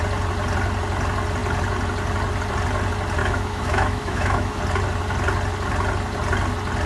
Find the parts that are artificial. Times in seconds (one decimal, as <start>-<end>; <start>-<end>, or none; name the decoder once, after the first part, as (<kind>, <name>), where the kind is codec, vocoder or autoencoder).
3.2-4.6 (autoencoder, DAC-VAE)